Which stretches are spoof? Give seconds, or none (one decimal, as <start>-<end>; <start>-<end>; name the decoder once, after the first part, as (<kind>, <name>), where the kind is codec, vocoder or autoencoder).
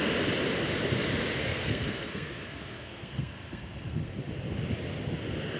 1.4-4.1 (codec, SNAC)